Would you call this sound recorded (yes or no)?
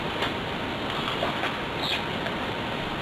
yes